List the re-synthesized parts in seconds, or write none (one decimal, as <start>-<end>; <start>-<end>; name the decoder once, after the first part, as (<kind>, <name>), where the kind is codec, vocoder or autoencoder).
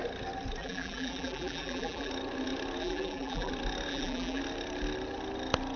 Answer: 0.6-2.1 (vocoder, BigVGAN v2); 2.8-3.5; 3.9-4.4